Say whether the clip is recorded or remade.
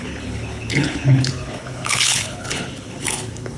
remade